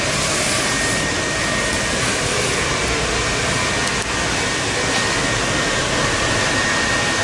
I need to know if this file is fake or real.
real